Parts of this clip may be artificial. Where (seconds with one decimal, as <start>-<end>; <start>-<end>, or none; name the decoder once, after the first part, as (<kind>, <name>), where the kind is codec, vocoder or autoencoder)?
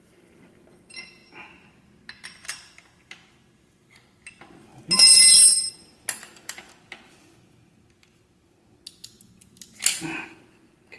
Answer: none